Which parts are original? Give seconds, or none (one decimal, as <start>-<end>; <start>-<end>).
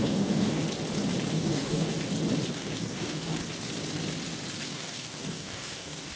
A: 0.6-1.3; 1.9-2.5; 3.4-4.6